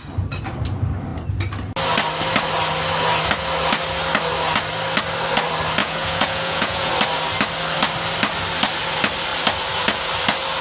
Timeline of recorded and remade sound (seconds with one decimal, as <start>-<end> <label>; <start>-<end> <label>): 0.0-5.8 recorded; 5.8-6.9 remade; 6.9-10.6 recorded